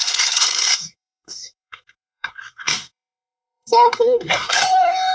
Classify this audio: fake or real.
fake